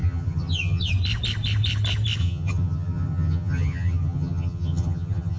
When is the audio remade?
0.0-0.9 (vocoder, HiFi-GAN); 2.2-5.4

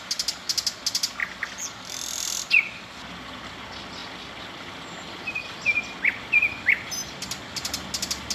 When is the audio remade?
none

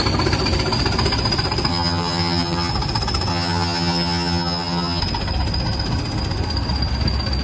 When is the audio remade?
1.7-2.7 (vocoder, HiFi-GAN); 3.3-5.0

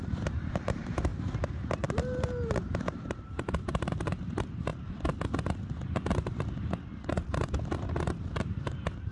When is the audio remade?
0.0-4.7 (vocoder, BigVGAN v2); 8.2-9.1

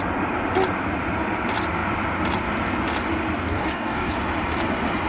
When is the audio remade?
3.5-4.1 (codec, DAC)